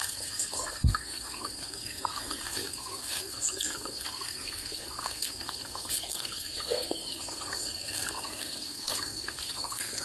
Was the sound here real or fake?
fake